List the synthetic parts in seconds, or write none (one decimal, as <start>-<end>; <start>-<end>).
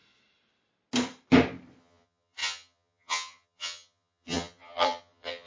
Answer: 1.8-5.5